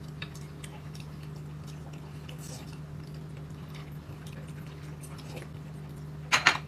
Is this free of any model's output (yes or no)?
yes